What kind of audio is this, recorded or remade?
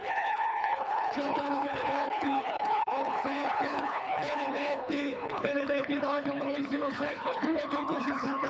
remade